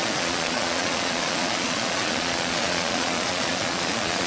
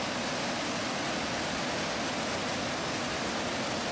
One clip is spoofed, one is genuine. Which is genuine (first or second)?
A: second